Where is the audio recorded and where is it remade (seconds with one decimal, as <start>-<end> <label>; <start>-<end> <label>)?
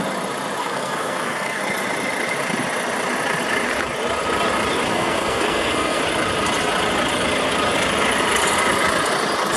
0.0-0.6 recorded; 0.6-1.6 remade; 1.6-4.9 recorded; 4.9-6.0 remade; 6.0-9.6 recorded